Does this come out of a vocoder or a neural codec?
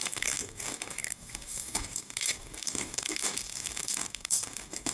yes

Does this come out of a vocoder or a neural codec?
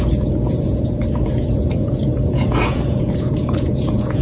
yes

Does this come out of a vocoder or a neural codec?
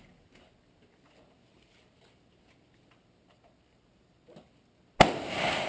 no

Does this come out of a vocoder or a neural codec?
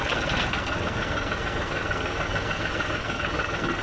yes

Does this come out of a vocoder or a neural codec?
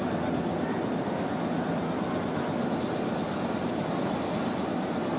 no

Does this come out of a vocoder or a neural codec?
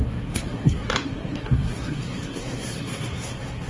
yes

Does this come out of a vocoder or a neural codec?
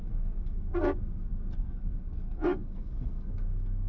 yes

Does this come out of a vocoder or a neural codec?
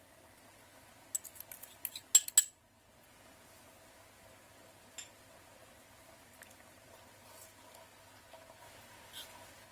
no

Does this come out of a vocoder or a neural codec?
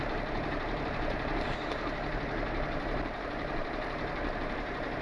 yes